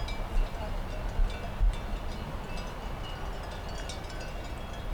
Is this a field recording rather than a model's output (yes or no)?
yes